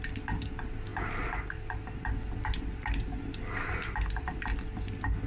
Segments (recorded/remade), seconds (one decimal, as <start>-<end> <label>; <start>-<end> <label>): 0.0-5.3 recorded